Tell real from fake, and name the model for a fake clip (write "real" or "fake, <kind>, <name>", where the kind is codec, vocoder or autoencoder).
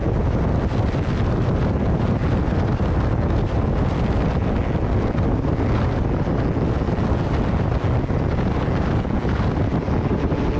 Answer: real